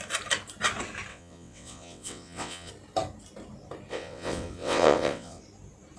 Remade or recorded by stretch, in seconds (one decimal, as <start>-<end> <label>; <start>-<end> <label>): 0.0-1.1 recorded; 1.1-2.7 remade; 2.7-3.9 recorded; 3.9-5.4 remade; 5.4-6.0 recorded